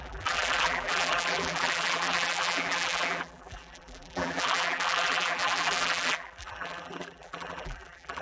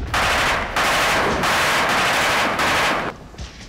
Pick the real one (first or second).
second